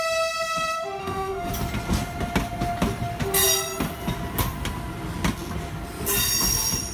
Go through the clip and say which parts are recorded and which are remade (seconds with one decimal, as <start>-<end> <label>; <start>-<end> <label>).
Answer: 0.0-1.0 recorded; 1.0-1.5 remade; 1.5-6.9 recorded